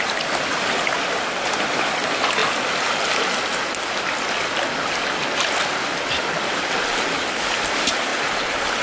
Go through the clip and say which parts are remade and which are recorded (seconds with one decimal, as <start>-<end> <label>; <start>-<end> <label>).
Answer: 0.0-8.8 recorded